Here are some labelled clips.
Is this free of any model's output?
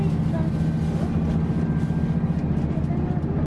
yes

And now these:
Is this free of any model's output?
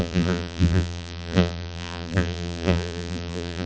no